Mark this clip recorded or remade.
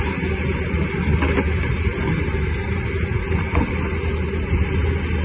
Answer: recorded